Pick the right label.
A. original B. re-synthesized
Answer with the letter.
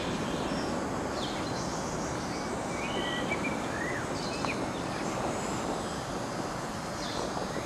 A